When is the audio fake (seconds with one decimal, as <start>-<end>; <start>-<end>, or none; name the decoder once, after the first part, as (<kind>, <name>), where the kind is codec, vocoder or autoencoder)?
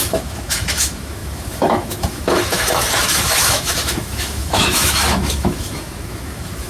0.0-6.7 (autoencoder, DAC-VAE)